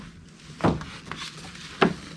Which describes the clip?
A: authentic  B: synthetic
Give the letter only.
A